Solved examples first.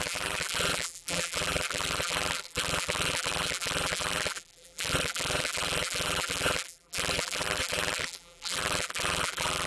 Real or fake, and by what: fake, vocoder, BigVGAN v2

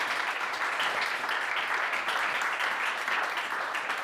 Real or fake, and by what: fake, vocoder, BigVGAN v2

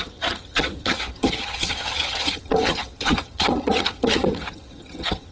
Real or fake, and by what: fake, vocoder, HiFi-GAN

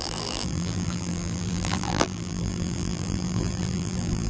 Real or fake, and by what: fake, vocoder, BigVGAN v2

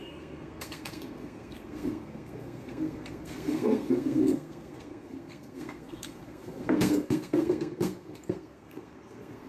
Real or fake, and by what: fake, codec, SNAC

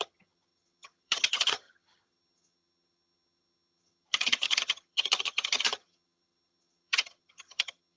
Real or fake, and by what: fake, vocoder, HiFi-GAN